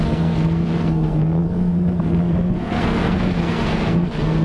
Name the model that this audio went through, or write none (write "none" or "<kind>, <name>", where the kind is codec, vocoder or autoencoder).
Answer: codec, SNAC